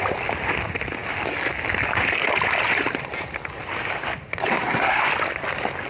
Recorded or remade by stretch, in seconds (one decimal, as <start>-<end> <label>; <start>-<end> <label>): 0.0-4.5 recorded; 4.5-5.1 remade; 5.1-5.9 recorded